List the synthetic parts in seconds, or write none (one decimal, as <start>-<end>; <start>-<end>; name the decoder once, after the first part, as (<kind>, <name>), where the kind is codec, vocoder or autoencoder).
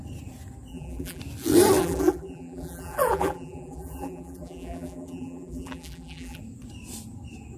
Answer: 0.7-1.2 (vocoder, BigVGAN v2); 1.8-6.4